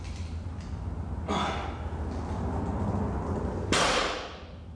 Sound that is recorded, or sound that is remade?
recorded